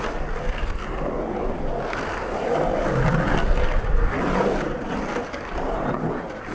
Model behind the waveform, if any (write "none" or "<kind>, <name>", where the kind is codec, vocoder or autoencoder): none